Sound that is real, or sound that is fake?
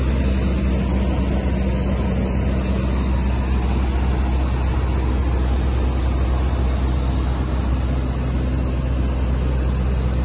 real